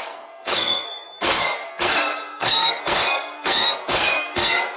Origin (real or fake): fake